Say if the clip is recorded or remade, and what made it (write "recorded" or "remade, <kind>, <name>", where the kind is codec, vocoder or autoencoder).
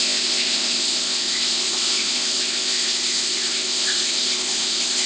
remade, codec, ZipCodec